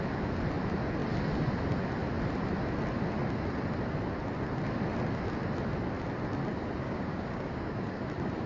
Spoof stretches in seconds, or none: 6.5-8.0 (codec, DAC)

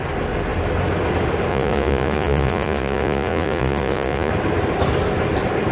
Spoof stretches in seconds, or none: 1.5-4.3 (vocoder, Vocos)

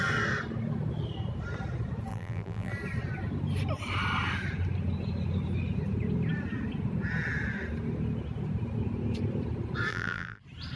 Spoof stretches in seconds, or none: 2.1-2.7 (vocoder, BigVGAN v2); 9.9-10.4

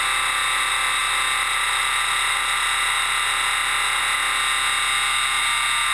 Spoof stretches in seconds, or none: none

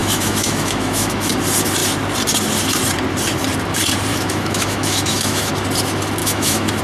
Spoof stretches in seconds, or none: 0.0-1.3 (autoencoder, DAC-VAE); 4.1-5.5; 6.2-6.8

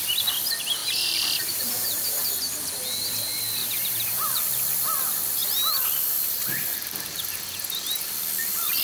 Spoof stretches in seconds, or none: 0.8-2.3 (vocoder, BigVGAN v2); 3.6-4.3; 6.7-7.4

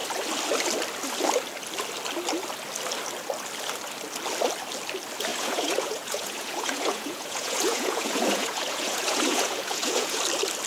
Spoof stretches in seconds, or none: 5.3-10.2 (vocoder, Vocos)